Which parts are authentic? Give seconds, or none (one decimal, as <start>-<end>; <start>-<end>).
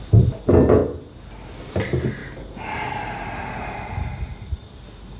0.0-5.2